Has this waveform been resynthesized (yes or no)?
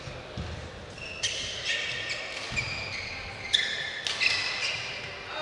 no